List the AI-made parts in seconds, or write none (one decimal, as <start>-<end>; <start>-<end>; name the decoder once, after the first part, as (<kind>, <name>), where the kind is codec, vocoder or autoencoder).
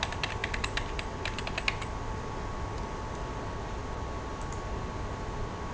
none